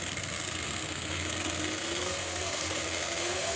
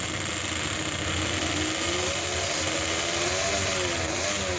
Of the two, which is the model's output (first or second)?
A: first